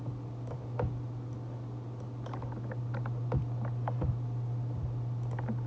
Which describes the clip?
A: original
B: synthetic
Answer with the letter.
A